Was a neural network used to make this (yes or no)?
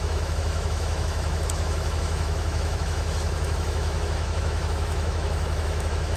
yes